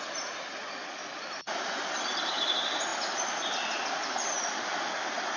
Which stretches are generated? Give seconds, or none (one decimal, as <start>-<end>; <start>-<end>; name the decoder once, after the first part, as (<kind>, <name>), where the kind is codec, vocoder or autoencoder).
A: none